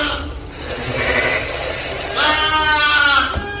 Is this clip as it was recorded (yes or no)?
yes